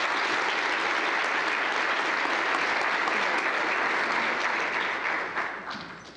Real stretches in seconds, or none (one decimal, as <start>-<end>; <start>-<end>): 0.0-6.2